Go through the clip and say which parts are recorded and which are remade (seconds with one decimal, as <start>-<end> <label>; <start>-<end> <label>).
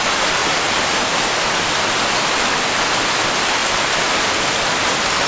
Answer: 0.0-0.4 recorded; 0.4-1.3 remade; 1.3-5.3 recorded